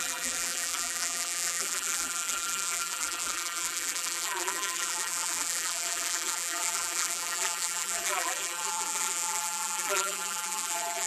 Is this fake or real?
fake